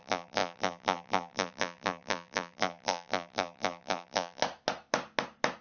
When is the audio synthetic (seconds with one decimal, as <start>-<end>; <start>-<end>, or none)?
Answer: 0.0-4.4